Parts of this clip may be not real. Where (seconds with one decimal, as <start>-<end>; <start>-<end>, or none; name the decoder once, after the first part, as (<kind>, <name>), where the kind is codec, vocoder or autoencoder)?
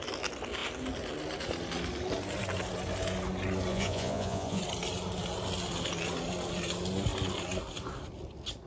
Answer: 3.7-4.6 (vocoder, Vocos)